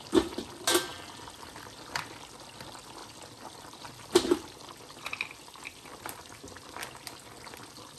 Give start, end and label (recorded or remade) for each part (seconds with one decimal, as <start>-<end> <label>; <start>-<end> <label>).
0.0-8.0 recorded